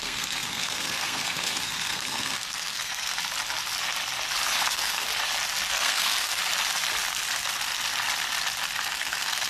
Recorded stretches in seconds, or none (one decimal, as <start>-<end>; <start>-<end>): 3.1-4.6; 5.1-5.7; 6.4-8.9